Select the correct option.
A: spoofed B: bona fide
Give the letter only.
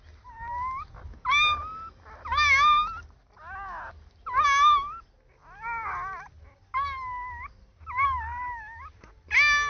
B